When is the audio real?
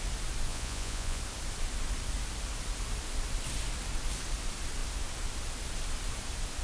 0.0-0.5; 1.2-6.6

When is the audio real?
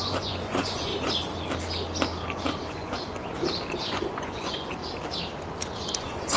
0.9-2.7; 3.3-3.8; 4.8-6.0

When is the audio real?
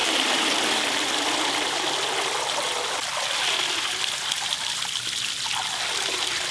0.0-6.5